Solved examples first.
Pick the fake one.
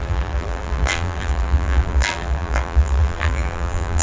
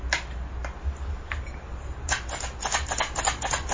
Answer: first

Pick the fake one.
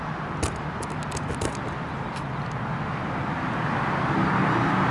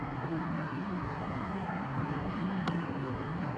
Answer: second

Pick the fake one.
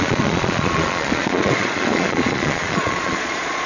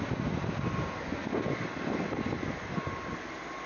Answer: first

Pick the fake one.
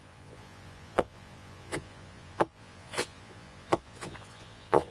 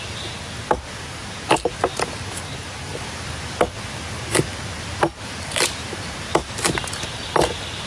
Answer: first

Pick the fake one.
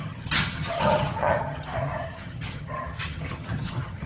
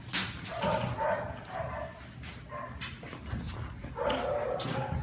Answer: first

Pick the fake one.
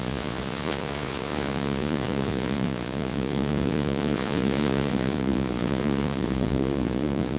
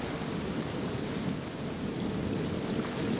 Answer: first